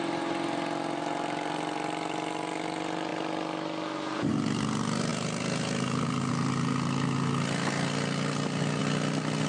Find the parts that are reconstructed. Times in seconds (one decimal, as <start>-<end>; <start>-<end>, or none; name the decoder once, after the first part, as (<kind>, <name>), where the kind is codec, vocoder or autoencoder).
none